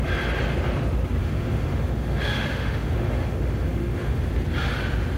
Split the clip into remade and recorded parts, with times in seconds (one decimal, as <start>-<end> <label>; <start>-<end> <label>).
0.0-1.2 recorded; 1.2-4.3 remade; 4.3-5.2 recorded